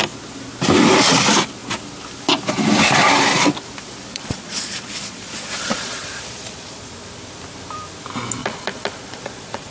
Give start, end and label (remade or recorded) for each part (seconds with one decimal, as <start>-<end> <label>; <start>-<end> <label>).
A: 0.0-4.1 recorded; 4.1-6.9 remade; 6.9-8.4 recorded; 8.4-9.7 remade